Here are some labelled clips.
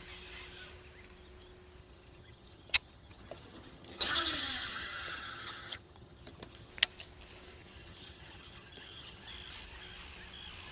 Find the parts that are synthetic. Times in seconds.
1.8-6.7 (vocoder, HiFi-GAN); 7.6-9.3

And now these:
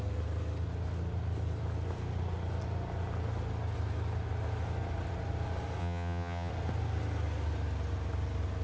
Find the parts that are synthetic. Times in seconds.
5.8-6.5 (vocoder, HiFi-GAN)

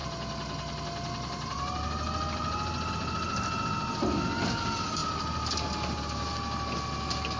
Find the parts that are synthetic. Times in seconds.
none

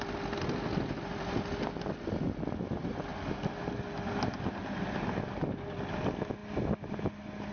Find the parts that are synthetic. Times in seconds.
none

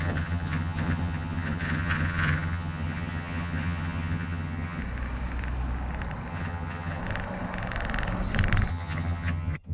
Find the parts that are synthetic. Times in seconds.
0.0-4.8 (vocoder, HiFi-GAN); 6.3-7.0; 8.7-9.7

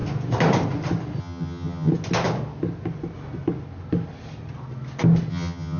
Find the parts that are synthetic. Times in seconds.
1.2-1.9 (vocoder, HiFi-GAN); 5.3-5.8

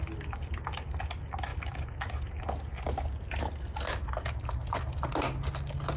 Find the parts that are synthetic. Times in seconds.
none

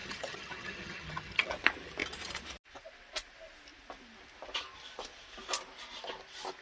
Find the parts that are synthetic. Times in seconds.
0.0-1.5 (vocoder, HiFi-GAN)